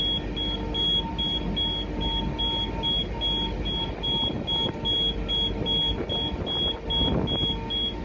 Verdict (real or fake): real